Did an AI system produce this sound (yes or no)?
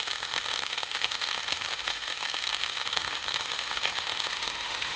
yes